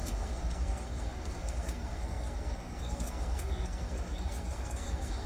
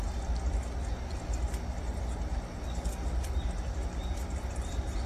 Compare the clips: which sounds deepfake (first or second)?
first